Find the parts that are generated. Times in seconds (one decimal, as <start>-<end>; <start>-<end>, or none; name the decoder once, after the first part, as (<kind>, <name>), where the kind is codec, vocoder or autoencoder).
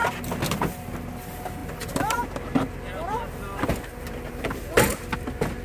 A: none